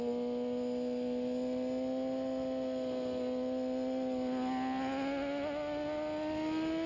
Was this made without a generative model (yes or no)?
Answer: yes